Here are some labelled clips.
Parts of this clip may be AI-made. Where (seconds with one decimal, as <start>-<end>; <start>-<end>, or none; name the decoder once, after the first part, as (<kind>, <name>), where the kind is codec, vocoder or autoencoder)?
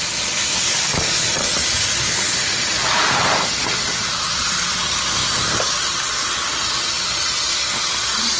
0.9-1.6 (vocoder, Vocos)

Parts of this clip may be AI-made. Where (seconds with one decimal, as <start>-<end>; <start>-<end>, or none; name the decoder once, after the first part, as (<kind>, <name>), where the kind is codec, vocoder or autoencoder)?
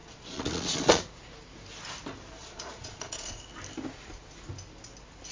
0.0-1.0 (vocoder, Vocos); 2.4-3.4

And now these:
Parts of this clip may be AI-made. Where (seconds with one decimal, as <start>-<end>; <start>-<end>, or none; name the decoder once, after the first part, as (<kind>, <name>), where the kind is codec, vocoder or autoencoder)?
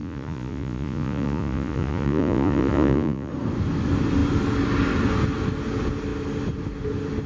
0.0-3.3 (vocoder, Vocos)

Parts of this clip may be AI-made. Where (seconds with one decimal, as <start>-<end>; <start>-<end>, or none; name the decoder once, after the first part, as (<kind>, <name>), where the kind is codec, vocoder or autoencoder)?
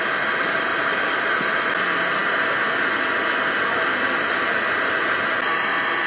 none